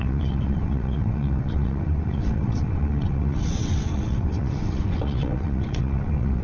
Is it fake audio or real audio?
fake